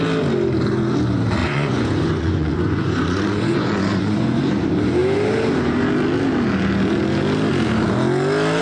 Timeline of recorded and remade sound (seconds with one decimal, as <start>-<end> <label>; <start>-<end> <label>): 0.0-1.4 recorded; 1.4-4.4 remade; 4.4-8.6 recorded